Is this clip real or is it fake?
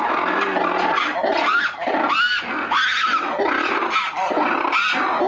real